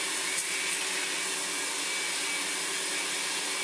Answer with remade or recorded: recorded